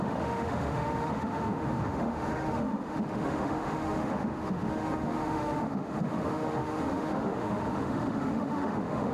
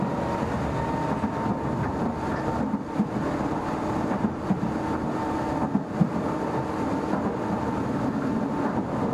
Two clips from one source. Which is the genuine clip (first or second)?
second